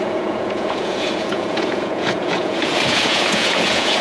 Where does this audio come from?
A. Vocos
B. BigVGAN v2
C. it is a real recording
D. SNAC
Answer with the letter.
A